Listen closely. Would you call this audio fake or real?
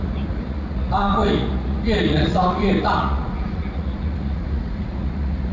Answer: fake